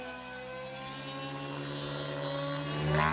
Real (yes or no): yes